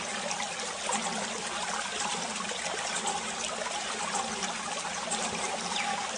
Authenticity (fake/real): real